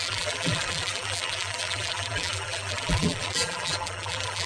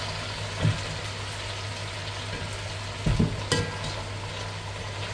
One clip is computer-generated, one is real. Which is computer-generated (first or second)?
first